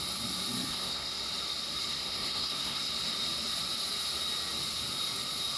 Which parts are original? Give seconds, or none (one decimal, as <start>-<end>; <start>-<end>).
0.0-0.7; 1.2-1.9; 2.9-5.6